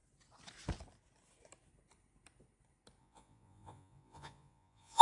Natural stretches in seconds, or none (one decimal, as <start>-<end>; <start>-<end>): 0.0-3.0